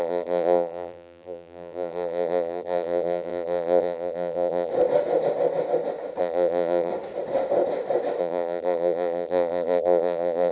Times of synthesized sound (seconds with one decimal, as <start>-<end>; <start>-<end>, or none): 0.0-4.7; 6.2-6.9; 8.2-10.5